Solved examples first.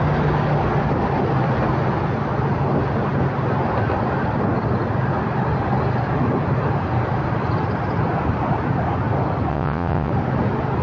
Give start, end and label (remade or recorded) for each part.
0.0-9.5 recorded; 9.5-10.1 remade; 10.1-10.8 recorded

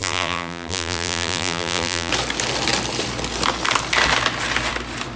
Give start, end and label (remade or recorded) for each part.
0.0-2.1 remade; 2.1-5.2 recorded

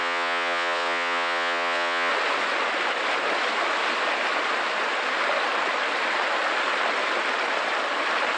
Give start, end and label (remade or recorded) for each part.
0.0-2.1 remade; 2.1-8.4 recorded

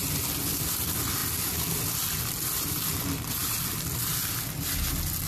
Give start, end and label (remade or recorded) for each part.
0.0-5.3 recorded